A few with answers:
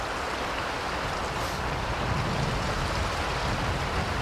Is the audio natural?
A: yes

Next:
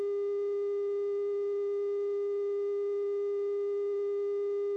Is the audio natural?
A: yes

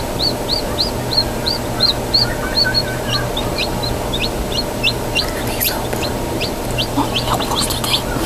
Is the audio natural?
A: yes